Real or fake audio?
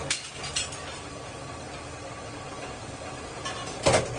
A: real